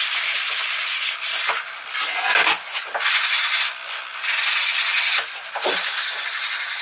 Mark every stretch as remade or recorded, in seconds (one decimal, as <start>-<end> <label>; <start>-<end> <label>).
0.0-6.8 recorded